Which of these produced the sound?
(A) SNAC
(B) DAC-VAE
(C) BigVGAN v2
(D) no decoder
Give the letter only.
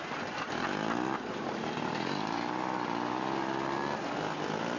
D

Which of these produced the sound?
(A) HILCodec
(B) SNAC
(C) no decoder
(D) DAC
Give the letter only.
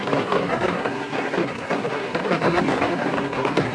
B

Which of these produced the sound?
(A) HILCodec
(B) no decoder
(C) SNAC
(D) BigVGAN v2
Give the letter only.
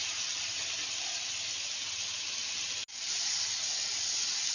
B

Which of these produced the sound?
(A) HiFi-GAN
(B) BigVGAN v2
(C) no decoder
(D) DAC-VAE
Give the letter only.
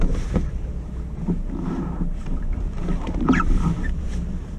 B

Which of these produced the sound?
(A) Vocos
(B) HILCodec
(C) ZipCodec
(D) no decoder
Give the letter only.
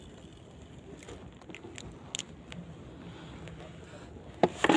D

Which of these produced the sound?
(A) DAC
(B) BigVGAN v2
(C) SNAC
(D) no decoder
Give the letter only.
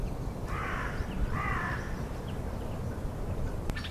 B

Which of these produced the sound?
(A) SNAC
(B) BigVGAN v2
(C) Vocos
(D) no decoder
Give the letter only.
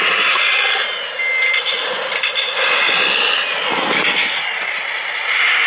D